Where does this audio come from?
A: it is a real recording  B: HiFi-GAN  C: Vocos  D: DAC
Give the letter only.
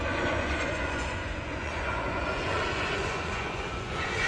C